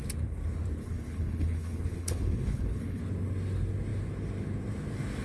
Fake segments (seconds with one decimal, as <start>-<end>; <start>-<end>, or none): 0.8-3.0